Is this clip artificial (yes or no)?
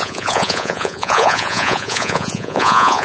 yes